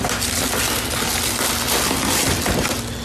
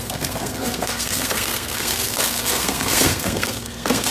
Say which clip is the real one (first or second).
first